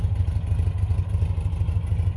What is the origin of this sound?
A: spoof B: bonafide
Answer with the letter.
B